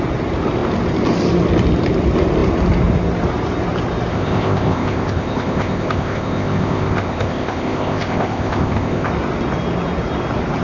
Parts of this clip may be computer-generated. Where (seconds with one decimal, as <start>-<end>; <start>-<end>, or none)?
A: 4.1-9.1